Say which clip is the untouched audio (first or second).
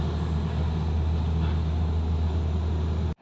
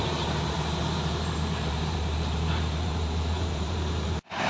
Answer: first